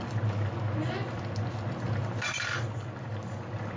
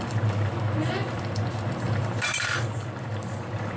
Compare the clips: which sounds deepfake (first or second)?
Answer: second